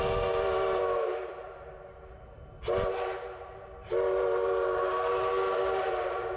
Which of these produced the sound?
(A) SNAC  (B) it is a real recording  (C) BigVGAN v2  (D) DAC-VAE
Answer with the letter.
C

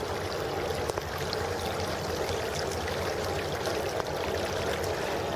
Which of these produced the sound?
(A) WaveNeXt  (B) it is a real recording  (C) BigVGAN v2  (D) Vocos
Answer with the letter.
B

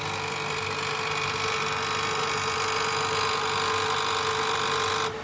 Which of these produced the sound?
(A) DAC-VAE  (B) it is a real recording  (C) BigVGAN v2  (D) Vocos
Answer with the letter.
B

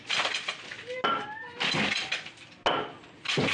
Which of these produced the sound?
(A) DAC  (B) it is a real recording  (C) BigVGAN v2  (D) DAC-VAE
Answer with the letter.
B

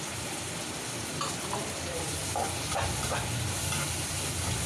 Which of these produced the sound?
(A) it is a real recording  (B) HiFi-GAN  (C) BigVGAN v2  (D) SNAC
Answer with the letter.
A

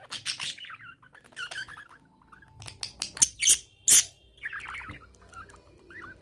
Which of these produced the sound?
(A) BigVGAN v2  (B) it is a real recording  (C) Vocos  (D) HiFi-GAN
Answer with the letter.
B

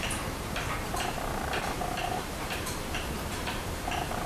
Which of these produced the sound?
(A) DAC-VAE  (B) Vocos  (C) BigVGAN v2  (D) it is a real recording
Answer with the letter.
C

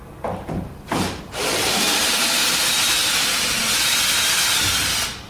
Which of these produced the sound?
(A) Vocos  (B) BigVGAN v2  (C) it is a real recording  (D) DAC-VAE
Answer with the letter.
B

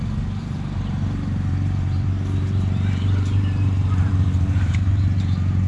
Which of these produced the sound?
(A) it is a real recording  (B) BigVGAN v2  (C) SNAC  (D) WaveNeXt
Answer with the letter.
B